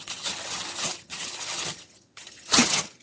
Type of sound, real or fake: fake